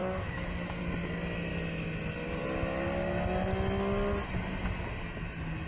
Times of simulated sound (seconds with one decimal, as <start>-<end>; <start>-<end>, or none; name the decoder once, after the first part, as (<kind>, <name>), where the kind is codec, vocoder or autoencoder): 0.0-0.8 (codec, DAC)